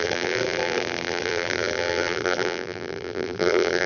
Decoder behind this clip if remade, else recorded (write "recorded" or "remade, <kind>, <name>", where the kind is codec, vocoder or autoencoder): remade, vocoder, BigVGAN v2